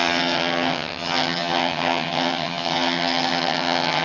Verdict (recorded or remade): remade